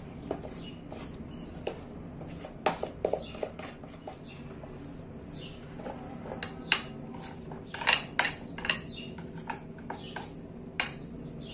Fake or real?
real